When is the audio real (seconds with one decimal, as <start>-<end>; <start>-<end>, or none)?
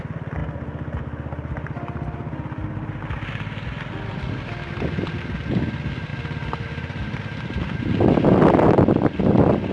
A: 0.0-9.7